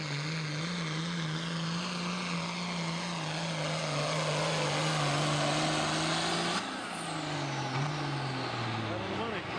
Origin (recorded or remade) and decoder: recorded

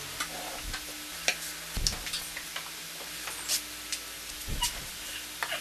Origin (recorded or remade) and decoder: recorded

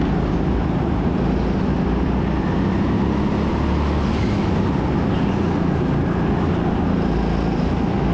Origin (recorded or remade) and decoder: recorded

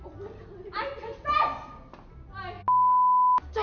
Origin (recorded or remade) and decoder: recorded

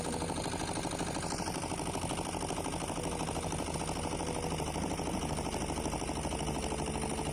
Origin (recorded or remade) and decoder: recorded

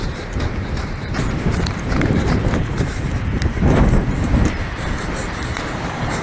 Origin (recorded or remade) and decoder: remade, vocoder, BigVGAN v2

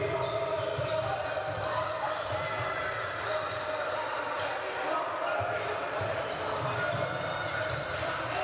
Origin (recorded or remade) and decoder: recorded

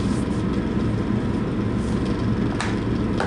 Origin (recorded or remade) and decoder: recorded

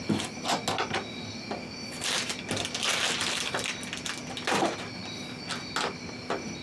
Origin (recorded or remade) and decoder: recorded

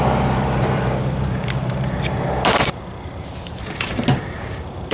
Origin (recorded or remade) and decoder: remade, vocoder, BigVGAN v2